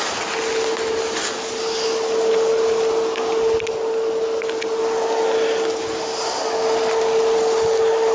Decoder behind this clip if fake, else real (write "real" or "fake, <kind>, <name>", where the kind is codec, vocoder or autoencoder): real